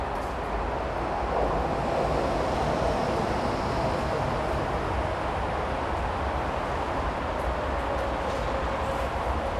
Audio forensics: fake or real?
real